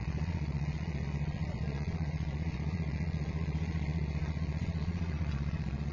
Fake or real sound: fake